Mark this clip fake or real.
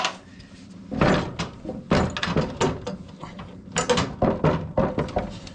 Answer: real